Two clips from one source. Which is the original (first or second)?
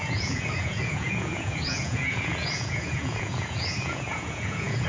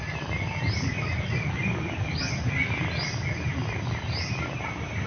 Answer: second